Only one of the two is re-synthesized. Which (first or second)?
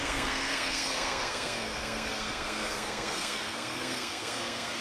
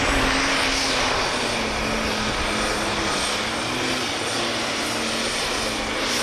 first